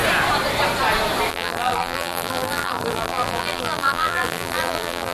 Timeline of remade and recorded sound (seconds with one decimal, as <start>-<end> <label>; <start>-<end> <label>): 0.0-1.3 recorded; 1.3-5.1 remade